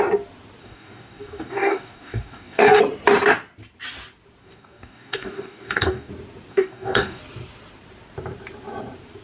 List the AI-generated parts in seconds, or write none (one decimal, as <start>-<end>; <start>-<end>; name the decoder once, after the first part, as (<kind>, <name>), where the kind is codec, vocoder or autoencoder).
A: 0.6-2.8 (codec, DAC); 4.4-6.1; 6.5-7.2